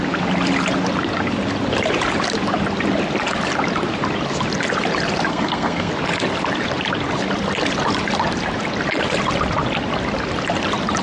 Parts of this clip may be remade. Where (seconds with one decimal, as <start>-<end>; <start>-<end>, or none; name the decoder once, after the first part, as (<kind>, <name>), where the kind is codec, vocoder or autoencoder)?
5.3-5.9 (codec, SNAC)